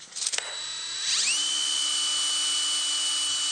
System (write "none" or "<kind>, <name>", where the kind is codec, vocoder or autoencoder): none